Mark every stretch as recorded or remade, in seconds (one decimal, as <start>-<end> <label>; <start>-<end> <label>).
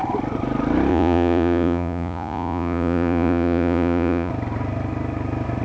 0.0-0.9 recorded; 0.9-4.3 remade; 4.3-5.6 recorded